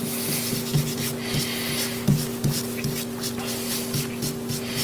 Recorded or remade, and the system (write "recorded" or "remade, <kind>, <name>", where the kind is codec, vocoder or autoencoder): recorded